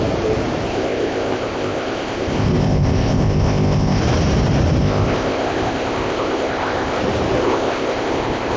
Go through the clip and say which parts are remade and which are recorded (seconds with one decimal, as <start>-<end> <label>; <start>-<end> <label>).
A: 0.0-0.7 recorded; 0.7-4.0 remade; 4.0-4.8 recorded; 4.8-7.0 remade; 7.0-7.4 recorded; 7.4-8.6 remade